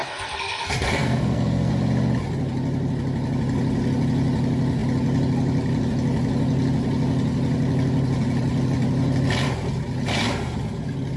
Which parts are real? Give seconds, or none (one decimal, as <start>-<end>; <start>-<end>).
1.7-11.2